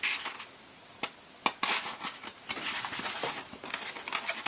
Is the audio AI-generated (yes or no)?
no